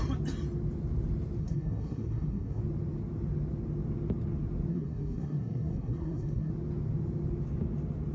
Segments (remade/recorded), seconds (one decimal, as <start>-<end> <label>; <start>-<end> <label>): 0.0-1.4 recorded; 1.4-2.6 remade; 2.6-4.7 recorded; 4.7-6.5 remade; 6.5-8.1 recorded